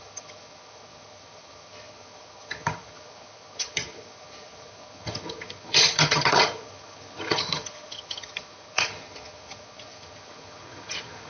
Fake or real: fake